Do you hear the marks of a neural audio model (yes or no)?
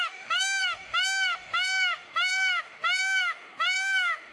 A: yes